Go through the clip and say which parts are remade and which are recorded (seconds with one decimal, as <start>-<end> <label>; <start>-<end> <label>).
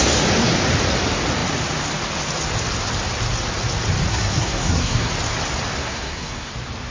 0.0-4.1 recorded; 4.1-5.1 remade; 5.1-5.8 recorded; 5.8-6.5 remade; 6.5-6.9 recorded